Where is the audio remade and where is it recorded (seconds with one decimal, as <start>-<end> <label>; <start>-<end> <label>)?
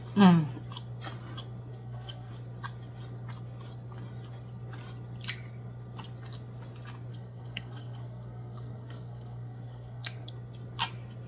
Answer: 0.0-1.7 recorded; 1.7-2.3 remade; 2.3-7.1 recorded; 7.1-10.3 remade; 10.3-11.3 recorded